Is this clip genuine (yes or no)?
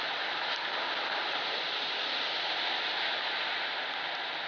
yes